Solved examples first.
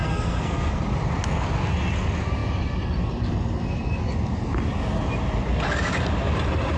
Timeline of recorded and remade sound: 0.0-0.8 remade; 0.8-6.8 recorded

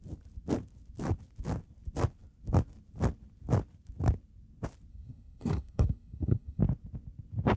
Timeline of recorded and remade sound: 0.0-4.9 recorded; 4.9-6.6 remade; 6.6-7.6 recorded

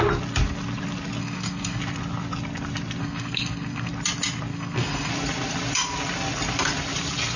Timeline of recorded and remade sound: 0.0-1.2 recorded; 1.2-1.8 remade; 1.8-3.0 recorded; 3.0-3.9 remade; 3.9-4.5 recorded; 4.5-5.1 remade; 5.1-7.4 recorded

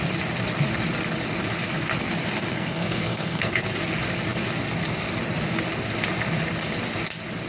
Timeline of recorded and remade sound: 0.0-2.5 recorded; 2.5-3.5 remade; 3.5-7.5 recorded